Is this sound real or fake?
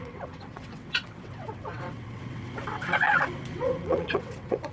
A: fake